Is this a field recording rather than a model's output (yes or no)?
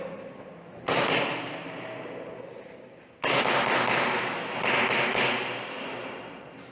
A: yes